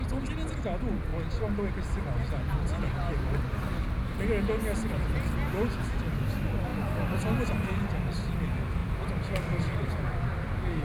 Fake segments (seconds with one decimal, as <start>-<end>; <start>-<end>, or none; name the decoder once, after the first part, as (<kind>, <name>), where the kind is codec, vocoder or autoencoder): 6.7-7.8 (vocoder, BigVGAN v2); 8.8-9.8